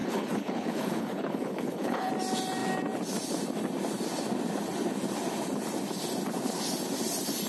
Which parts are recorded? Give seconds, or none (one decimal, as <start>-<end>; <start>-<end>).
2.1-7.5